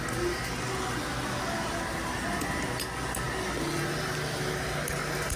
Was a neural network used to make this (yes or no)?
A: no